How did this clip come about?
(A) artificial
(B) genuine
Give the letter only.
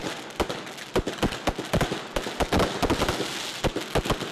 B